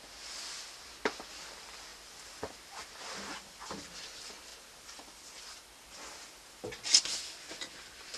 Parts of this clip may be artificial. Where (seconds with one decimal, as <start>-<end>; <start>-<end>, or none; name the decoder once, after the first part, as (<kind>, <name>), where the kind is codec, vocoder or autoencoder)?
none